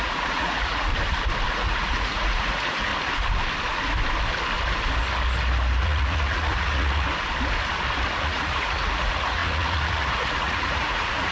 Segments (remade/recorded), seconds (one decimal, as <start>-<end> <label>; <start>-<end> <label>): 0.0-0.9 remade; 0.9-1.5 recorded; 1.5-2.9 remade; 2.9-5.8 recorded; 5.8-7.1 remade; 7.1-8.1 recorded; 8.1-11.3 remade